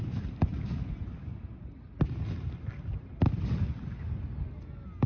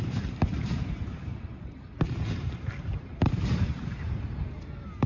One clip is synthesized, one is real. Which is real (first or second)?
first